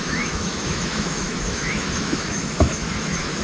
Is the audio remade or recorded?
remade